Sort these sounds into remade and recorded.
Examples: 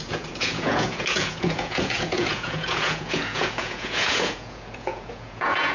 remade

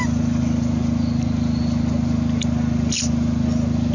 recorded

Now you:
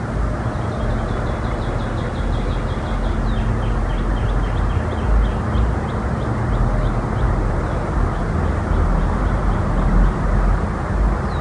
recorded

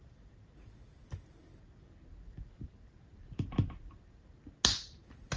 recorded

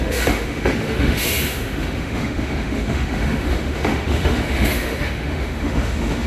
remade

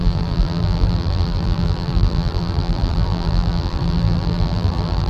remade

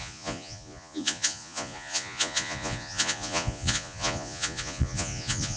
remade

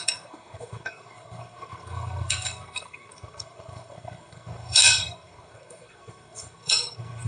remade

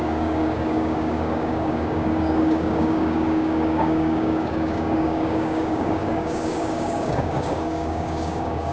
remade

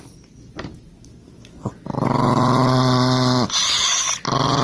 recorded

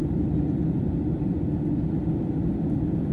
recorded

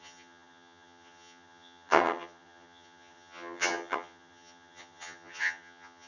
remade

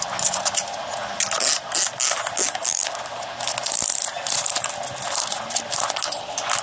recorded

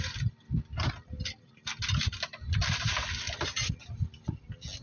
recorded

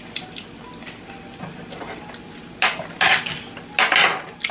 recorded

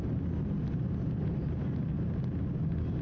recorded